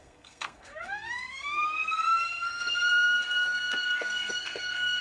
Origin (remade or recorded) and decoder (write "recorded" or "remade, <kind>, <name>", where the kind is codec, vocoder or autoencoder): remade, codec, SNAC